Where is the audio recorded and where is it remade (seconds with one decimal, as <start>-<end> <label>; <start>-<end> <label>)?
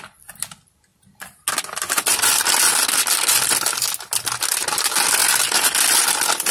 0.0-6.5 recorded